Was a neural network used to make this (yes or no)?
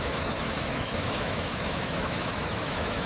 yes